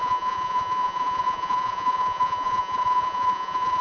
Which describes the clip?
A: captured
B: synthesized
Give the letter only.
B